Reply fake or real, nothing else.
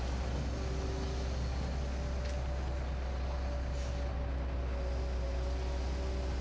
real